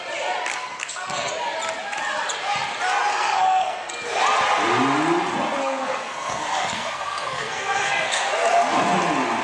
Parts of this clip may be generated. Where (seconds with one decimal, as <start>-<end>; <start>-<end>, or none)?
0.5-1.3; 3.1-3.9; 5.6-8.3